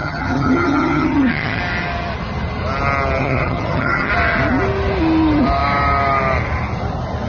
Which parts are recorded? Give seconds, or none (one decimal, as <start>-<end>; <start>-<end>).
1.6-3.2; 4.1-7.3